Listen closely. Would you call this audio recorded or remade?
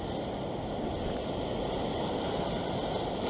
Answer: recorded